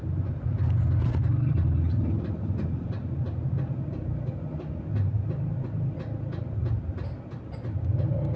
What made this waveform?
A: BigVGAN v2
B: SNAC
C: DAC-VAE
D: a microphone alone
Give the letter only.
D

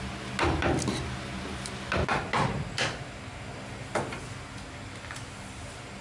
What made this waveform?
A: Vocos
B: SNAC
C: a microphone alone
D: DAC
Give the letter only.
C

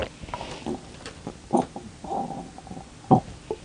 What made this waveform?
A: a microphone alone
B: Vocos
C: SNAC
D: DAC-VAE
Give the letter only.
A